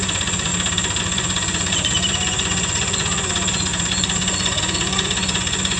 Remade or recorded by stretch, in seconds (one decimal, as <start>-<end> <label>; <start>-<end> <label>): 0.0-0.5 remade; 0.5-1.0 recorded; 1.0-5.8 remade